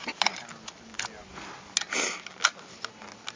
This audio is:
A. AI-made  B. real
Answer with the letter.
B